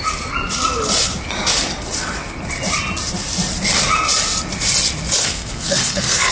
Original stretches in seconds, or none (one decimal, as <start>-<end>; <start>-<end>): 0.0-5.2